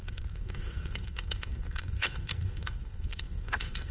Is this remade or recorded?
remade